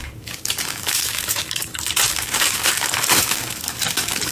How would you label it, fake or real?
fake